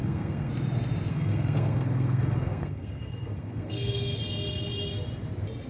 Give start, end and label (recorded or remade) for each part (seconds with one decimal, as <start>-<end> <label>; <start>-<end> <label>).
0.0-0.5 remade; 0.5-1.1 recorded; 1.1-4.2 remade; 4.2-5.7 recorded